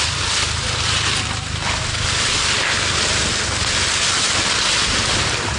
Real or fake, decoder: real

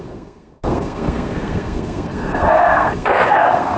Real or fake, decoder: fake, codec, SNAC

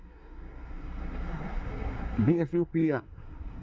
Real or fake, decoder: fake, codec, SNAC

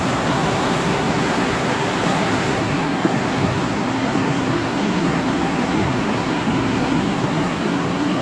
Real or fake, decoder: fake, codec, SNAC